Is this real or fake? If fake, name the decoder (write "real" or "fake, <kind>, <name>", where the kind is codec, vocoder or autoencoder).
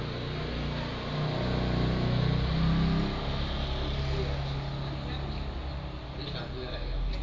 real